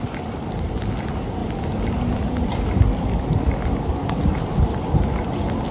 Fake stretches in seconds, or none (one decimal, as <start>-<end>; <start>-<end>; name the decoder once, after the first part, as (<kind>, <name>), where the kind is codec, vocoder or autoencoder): none